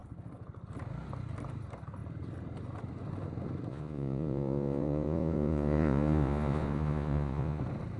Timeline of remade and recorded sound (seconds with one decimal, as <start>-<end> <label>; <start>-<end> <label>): 0.0-3.7 recorded; 3.7-7.6 remade; 7.6-8.0 recorded